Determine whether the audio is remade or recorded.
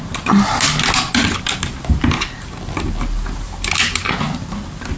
recorded